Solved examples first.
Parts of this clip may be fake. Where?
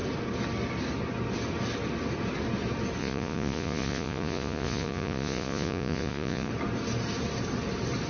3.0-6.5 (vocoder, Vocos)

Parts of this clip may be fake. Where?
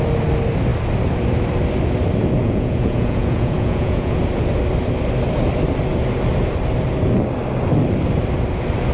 2.4-4.2 (vocoder, Vocos)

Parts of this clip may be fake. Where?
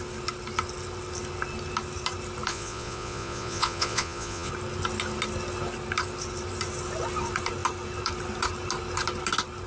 2.5-4.5 (vocoder, Vocos)